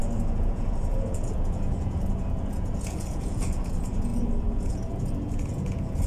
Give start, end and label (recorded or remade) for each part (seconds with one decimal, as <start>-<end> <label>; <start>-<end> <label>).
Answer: 0.0-6.1 remade